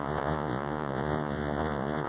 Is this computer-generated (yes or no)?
yes